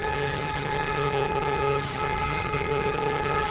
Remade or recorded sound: remade